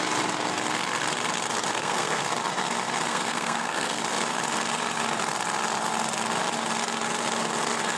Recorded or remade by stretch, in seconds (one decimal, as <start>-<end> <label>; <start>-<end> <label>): 0.0-1.7 recorded; 1.7-2.3 remade; 2.3-3.1 recorded; 3.1-4.0 remade; 4.0-8.0 recorded